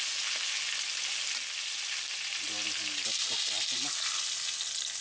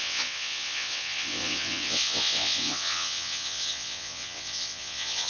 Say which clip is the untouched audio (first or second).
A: first